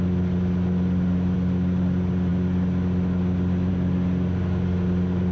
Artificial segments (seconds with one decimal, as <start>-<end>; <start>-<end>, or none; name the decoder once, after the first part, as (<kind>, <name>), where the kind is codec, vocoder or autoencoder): none